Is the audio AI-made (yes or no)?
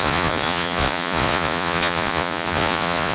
yes